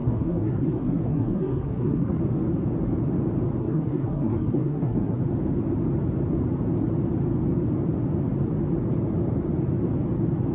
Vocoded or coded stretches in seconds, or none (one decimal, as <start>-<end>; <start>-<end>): 0.0-2.2; 3.6-5.2